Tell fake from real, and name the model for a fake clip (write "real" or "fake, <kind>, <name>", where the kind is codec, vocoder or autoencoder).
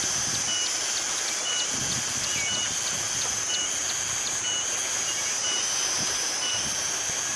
real